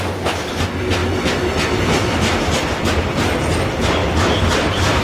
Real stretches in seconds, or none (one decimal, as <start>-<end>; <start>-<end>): 0.0-4.0